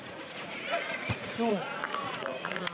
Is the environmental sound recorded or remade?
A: remade